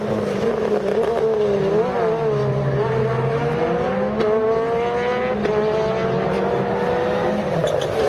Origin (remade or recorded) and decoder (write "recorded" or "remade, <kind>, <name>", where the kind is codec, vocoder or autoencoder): recorded